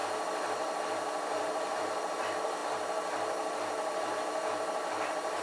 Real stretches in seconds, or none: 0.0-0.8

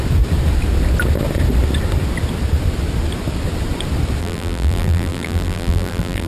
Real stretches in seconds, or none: 0.0-4.2

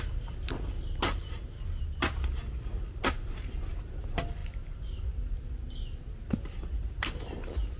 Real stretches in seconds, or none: 0.0-7.8

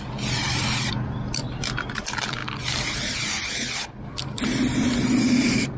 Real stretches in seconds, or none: none

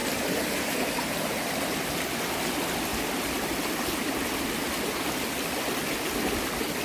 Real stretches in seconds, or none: 1.5-6.8

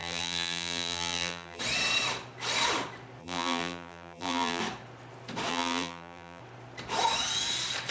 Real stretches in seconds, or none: 1.6-3.2; 4.6-5.5; 6.4-7.9

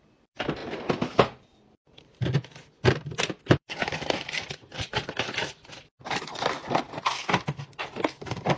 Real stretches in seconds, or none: 4.7-8.2

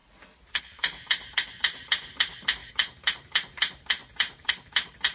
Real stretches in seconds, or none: 0.0-0.6